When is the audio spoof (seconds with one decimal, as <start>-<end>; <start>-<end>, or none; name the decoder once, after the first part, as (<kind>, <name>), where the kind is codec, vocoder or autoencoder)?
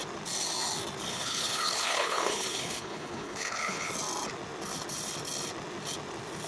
1.1-3.9 (codec, HILCodec)